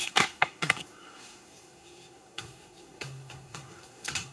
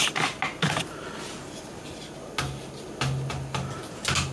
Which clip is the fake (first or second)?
first